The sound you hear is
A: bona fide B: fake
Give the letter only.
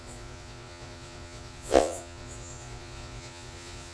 B